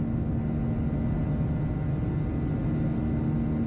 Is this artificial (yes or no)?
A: no